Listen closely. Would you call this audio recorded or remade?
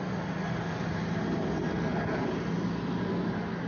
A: recorded